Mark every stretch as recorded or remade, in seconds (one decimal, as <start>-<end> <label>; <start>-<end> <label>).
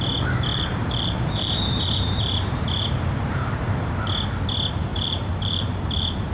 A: 0.0-0.5 recorded; 0.5-3.9 remade; 3.9-4.9 recorded; 4.9-6.3 remade